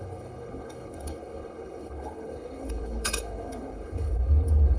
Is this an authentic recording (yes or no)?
no